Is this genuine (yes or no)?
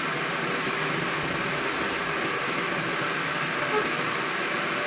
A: yes